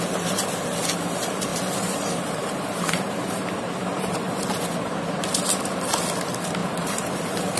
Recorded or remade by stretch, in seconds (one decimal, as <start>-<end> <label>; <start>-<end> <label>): 0.0-1.5 recorded; 1.5-4.6 remade; 4.6-6.6 recorded; 6.6-7.6 remade